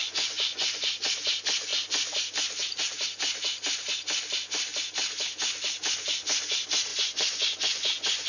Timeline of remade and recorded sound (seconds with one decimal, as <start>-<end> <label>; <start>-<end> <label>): 0.0-1.1 remade; 1.1-6.9 recorded; 6.9-8.3 remade